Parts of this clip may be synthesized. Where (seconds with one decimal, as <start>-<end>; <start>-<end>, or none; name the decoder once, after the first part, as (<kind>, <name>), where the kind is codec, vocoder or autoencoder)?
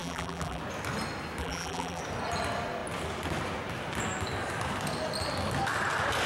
0.0-0.6 (vocoder, BigVGAN v2); 1.4-2.0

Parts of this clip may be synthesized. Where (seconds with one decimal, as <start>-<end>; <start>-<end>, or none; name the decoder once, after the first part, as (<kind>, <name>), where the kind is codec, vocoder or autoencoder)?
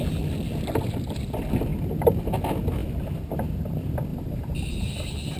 4.1-5.4 (vocoder, BigVGAN v2)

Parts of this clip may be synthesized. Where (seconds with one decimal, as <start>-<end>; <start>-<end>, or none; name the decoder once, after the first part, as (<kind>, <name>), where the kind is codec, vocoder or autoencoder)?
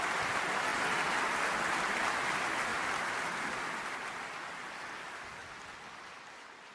none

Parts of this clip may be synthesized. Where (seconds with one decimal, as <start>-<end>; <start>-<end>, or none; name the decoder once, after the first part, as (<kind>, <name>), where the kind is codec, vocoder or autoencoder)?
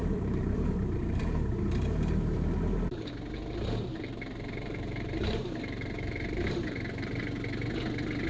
0.0-3.1 (vocoder, BigVGAN v2); 3.9-7.2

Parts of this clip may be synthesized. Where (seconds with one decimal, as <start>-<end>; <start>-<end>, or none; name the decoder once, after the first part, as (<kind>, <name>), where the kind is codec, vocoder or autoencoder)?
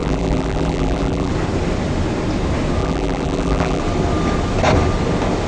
0.0-1.3 (vocoder, BigVGAN v2); 2.8-3.8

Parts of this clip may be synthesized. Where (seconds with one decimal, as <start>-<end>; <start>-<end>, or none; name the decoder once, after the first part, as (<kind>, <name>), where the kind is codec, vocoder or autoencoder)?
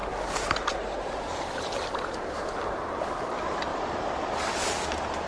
0.0-3.2 (vocoder, BigVGAN v2); 3.7-5.3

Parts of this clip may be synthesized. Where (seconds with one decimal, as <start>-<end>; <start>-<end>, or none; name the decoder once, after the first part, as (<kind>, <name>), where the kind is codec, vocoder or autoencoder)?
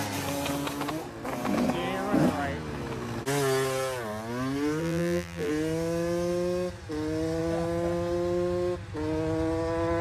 4.8-5.5 (vocoder, BigVGAN v2)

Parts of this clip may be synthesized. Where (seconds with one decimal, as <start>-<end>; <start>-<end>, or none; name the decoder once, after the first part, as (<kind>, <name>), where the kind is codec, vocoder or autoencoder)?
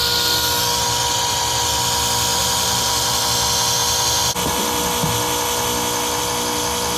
2.3-3.2 (vocoder, BigVGAN v2)